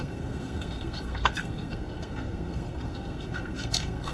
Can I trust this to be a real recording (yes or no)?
no